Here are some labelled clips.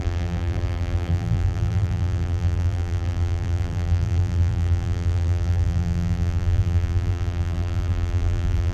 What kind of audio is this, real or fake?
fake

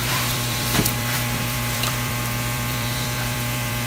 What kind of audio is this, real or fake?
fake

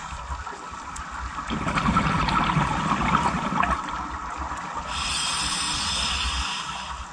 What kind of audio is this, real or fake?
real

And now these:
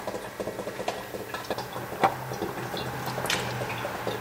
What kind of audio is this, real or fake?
real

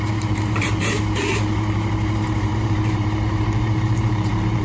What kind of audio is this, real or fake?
fake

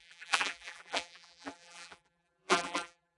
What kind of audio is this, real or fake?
fake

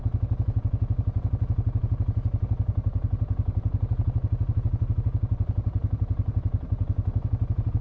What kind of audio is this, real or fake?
fake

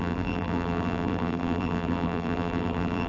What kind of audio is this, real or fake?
fake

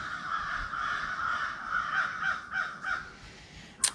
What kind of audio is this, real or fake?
real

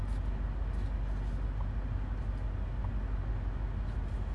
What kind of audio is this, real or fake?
real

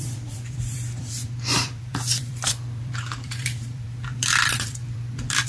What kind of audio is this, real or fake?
fake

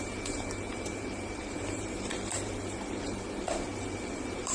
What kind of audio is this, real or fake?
fake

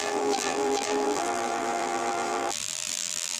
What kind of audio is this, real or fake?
fake